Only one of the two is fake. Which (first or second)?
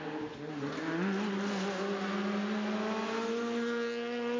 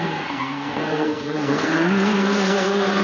second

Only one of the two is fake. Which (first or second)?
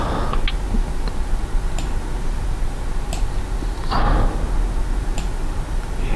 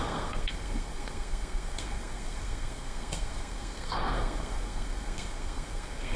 second